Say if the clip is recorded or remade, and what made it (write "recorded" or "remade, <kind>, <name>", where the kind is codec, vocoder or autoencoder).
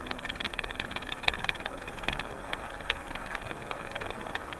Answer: remade, codec, SNAC